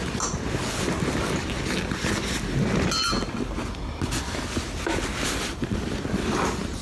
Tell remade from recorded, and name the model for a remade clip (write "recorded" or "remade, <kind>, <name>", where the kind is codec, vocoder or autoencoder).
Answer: recorded